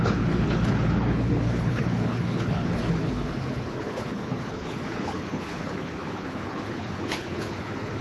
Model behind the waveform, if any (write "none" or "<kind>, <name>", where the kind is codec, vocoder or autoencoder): codec, HILCodec